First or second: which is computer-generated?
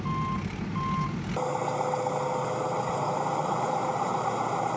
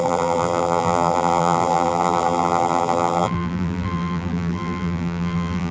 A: second